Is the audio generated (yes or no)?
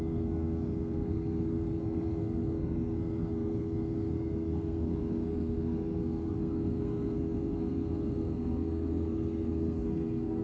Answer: yes